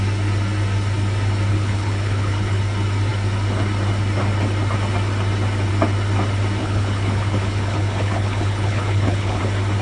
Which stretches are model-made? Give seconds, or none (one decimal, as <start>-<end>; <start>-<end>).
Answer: 1.5-2.6; 6.6-9.4